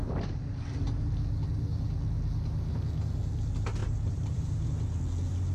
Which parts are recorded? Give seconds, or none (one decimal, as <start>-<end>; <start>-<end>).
0.0-3.8; 4.7-5.5